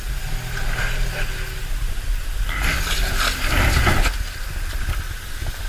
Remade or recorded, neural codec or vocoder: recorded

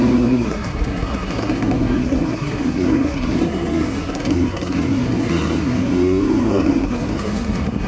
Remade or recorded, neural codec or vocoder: remade, codec, SNAC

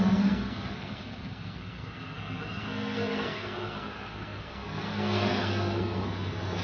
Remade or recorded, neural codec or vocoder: remade, codec, SNAC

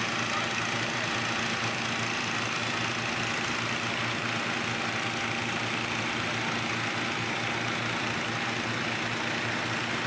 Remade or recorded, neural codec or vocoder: recorded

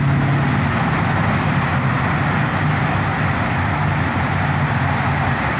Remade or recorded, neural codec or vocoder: recorded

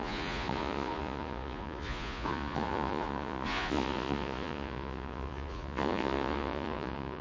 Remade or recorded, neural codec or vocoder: remade, vocoder, Vocos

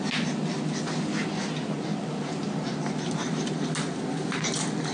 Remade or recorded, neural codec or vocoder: recorded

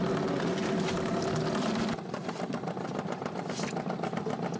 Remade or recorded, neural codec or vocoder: recorded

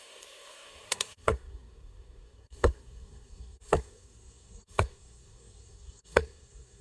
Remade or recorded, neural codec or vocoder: remade, codec, SNAC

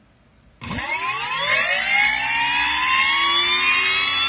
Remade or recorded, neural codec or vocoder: recorded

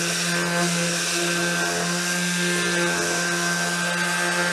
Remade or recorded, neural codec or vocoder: recorded